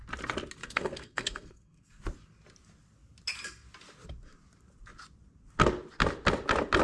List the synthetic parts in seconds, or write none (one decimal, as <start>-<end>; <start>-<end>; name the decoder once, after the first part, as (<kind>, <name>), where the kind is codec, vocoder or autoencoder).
0.6-2.0 (codec, SNAC)